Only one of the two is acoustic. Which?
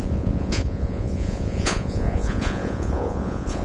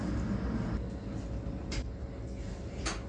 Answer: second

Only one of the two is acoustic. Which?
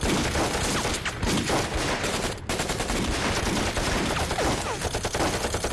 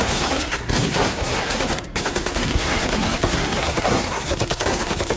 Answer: first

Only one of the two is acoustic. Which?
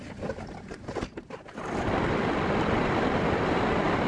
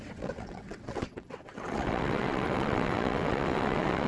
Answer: first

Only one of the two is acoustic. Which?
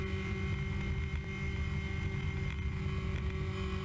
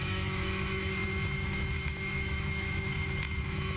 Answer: first